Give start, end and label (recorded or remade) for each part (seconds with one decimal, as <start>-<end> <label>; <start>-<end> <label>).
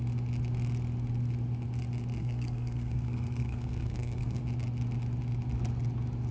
0.0-2.2 recorded; 2.2-4.4 remade; 4.4-6.3 recorded